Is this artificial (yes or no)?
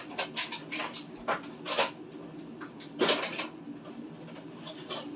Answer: no